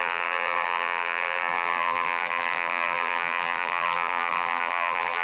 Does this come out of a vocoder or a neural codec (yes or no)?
yes